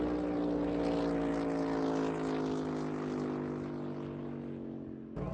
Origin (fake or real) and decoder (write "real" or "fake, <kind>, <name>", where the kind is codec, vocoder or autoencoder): real